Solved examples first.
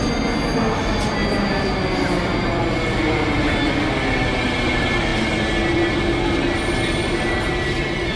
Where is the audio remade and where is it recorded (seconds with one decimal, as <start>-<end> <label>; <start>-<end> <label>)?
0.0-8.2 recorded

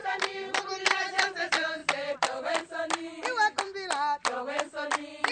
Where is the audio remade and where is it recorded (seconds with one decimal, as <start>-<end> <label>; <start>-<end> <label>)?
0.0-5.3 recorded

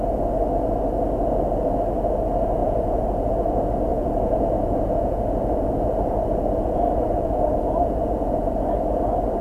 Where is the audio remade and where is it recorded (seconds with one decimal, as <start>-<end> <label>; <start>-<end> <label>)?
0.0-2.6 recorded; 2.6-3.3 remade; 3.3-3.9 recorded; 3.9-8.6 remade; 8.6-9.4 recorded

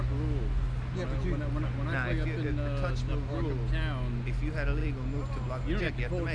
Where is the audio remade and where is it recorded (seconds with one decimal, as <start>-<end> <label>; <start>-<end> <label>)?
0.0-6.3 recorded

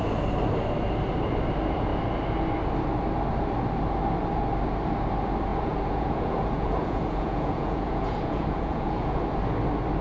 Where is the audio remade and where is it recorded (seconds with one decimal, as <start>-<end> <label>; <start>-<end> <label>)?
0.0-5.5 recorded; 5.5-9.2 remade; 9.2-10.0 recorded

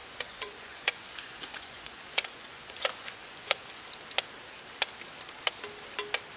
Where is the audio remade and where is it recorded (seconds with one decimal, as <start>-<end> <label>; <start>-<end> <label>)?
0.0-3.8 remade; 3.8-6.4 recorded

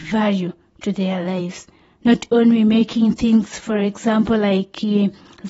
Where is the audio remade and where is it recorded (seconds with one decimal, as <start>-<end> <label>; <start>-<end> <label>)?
0.0-1.4 remade; 1.4-2.8 recorded; 2.8-4.3 remade; 4.3-5.5 recorded